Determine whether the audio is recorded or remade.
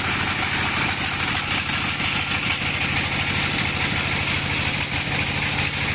recorded